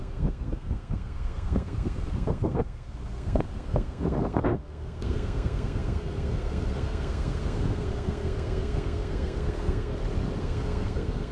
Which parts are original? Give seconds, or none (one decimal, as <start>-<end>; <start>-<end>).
9.9-10.4